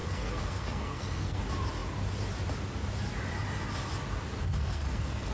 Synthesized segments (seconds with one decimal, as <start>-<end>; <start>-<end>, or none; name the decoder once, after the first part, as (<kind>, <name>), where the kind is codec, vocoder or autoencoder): 0.0-1.4 (codec, SNAC); 4.4-5.3